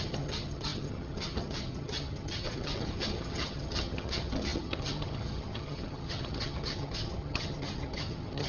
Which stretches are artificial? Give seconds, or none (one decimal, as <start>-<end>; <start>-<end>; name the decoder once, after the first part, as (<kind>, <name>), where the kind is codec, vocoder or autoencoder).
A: 0.0-8.5 (vocoder, HiFi-GAN)